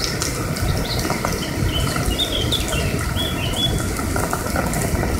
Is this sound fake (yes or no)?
no